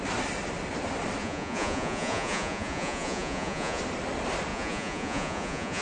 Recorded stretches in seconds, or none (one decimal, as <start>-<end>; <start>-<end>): 0.0-1.2; 3.8-4.5